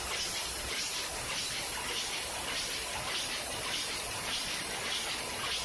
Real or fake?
real